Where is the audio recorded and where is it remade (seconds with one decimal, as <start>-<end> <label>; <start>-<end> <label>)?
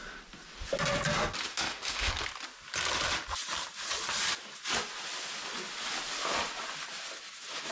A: 0.0-1.5 recorded; 1.5-2.1 remade; 2.1-7.7 recorded